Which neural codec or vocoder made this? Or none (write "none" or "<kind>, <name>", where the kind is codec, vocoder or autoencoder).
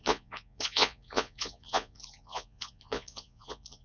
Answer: vocoder, Vocos